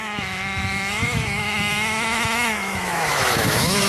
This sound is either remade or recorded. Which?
remade